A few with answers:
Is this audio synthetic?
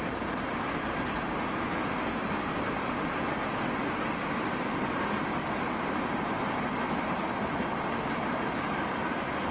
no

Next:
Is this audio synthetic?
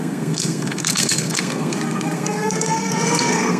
yes